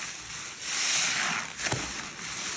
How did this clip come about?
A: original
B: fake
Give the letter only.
A